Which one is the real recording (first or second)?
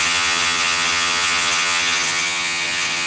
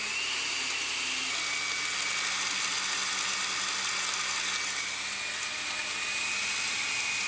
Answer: second